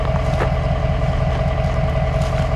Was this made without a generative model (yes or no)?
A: yes